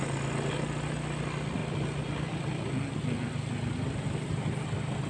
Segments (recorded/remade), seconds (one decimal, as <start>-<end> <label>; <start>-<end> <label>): 0.0-5.1 recorded